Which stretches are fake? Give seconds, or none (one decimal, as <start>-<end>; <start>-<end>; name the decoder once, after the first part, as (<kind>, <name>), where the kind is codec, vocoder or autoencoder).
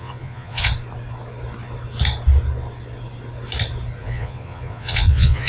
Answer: 0.0-0.7 (vocoder, Vocos); 4.0-5.5